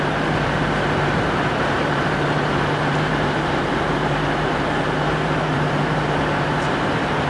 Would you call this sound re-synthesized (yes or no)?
yes